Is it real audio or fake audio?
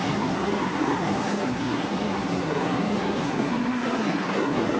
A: fake